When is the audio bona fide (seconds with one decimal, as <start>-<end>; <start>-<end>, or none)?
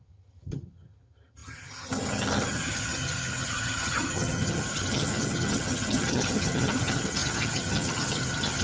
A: none